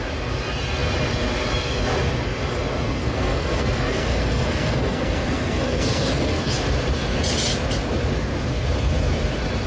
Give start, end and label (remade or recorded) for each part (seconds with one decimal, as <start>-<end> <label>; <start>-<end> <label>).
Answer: 0.0-3.0 recorded; 3.0-6.4 remade; 6.4-9.7 recorded